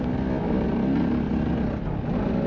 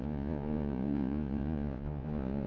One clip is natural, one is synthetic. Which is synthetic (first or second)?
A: second